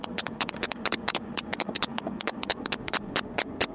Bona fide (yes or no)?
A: no